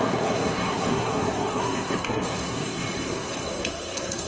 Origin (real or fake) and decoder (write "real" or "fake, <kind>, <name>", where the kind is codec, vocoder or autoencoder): fake, codec, SNAC